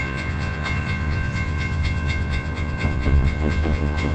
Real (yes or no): no